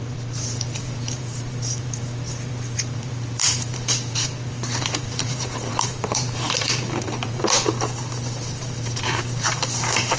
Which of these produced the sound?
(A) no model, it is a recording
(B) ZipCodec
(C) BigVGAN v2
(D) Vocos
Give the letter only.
C